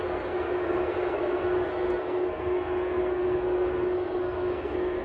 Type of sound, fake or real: fake